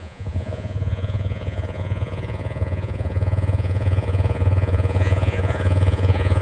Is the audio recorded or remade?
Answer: remade